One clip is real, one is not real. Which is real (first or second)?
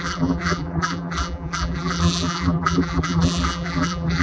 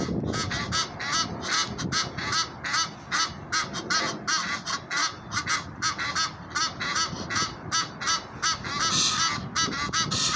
second